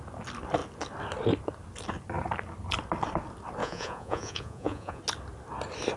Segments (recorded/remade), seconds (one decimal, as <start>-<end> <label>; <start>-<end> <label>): 0.0-3.6 recorded; 3.6-5.0 remade; 5.0-6.0 recorded